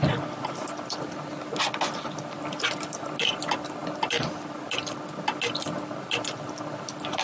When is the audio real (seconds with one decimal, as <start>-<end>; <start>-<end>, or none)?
0.0-7.2